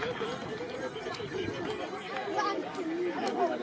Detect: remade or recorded recorded